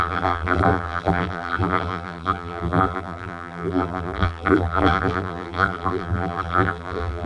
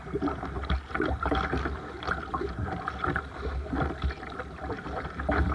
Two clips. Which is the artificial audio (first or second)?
first